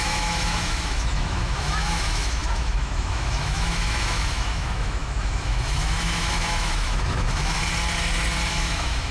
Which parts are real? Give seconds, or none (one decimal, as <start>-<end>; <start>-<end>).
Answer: 7.6-8.5